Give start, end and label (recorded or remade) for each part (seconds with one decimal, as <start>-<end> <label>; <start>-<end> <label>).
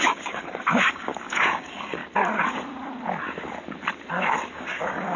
0.0-2.0 remade; 2.0-4.5 recorded; 4.5-5.2 remade